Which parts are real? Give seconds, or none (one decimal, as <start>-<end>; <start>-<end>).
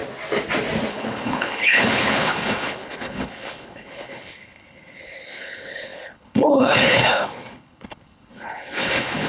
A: 0.0-0.9